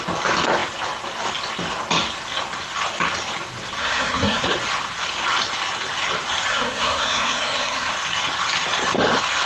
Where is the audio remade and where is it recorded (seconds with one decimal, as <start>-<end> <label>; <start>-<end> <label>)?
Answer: 0.0-3.8 recorded; 3.8-4.4 remade; 4.4-6.5 recorded; 6.5-7.9 remade; 7.9-9.5 recorded